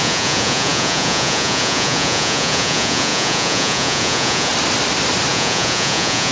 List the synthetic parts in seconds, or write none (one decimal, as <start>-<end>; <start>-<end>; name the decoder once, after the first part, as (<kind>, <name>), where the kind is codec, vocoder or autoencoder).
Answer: 0.0-4.5 (vocoder, Vocos); 5.3-6.3